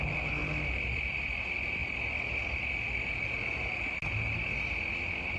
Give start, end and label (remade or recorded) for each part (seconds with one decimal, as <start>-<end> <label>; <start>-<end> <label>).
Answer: 0.0-0.4 recorded; 0.4-1.4 remade; 1.4-5.4 recorded